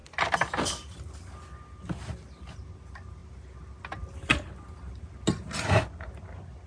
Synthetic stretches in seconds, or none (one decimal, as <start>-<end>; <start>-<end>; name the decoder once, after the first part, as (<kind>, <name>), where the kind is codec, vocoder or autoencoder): none